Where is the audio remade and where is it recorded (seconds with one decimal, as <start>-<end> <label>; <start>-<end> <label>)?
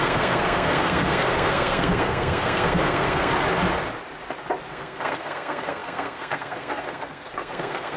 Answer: 0.0-3.3 remade; 3.3-4.7 recorded; 4.7-8.0 remade